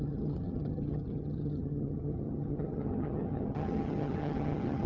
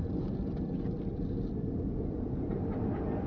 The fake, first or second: first